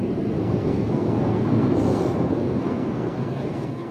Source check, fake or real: fake